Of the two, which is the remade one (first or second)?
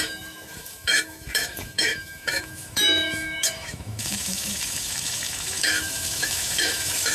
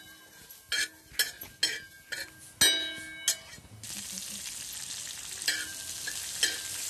first